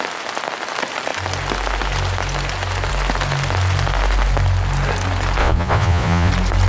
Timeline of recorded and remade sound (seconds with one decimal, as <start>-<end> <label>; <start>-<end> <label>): 0.0-5.4 recorded; 5.4-6.3 remade; 6.3-6.7 recorded